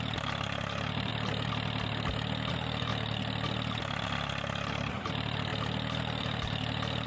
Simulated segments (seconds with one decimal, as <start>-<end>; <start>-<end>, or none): 0.0-1.1; 2.5-2.9; 5.0-5.5; 6.2-7.1